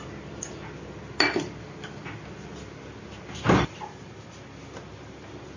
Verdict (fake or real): real